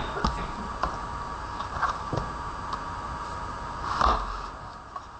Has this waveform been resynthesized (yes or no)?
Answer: no